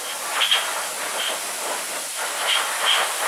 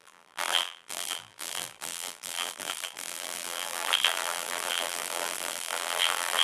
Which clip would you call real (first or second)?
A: first